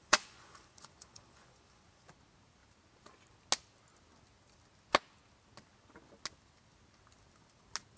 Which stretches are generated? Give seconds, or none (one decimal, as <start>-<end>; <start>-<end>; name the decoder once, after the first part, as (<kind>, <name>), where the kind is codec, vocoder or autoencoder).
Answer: 0.0-2.1 (vocoder, Vocos)